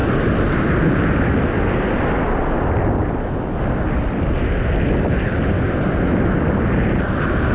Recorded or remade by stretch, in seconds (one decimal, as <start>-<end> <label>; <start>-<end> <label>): 0.0-7.5 recorded